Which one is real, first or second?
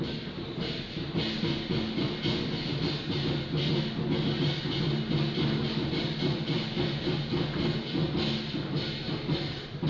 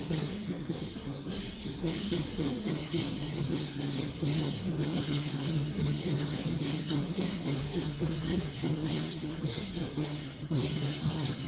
first